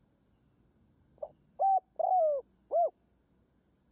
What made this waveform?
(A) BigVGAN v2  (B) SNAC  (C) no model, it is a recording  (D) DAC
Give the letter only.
C